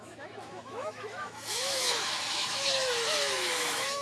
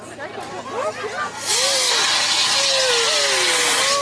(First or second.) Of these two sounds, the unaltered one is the second